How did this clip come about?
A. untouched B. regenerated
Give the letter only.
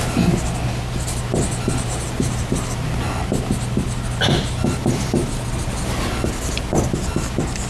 A